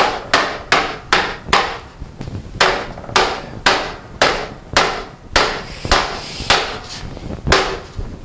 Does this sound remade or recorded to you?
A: recorded